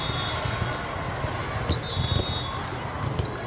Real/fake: real